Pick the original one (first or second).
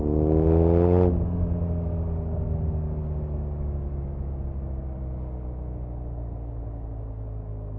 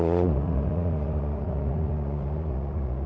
first